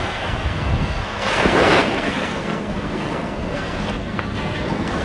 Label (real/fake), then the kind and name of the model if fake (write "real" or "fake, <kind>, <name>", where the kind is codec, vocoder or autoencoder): fake, codec, SNAC